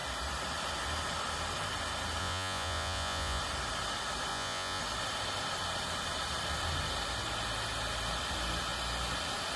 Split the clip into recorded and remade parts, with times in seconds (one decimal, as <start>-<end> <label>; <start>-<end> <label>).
0.0-2.2 recorded; 2.2-3.4 remade; 3.4-4.3 recorded; 4.3-4.8 remade; 4.8-9.6 recorded